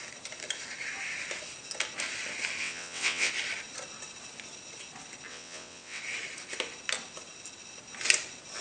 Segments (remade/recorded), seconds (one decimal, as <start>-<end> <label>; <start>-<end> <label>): 0.0-2.6 recorded; 2.6-3.3 remade; 3.3-5.3 recorded; 5.3-6.0 remade; 6.0-8.6 recorded

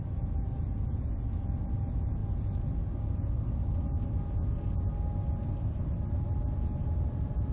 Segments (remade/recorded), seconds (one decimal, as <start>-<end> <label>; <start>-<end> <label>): 0.0-7.5 recorded